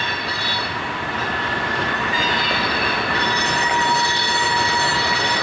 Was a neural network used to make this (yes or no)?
no